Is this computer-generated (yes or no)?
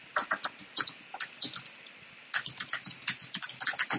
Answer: no